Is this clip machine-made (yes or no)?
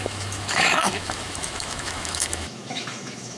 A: yes